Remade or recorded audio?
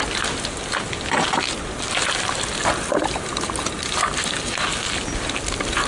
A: recorded